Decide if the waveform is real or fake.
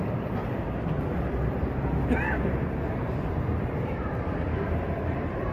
fake